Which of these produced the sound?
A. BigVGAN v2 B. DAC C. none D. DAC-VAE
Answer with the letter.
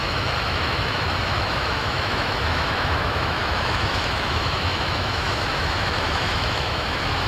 D